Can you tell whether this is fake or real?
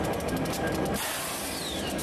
real